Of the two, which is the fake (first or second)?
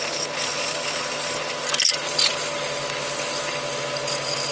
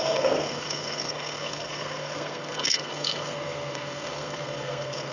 second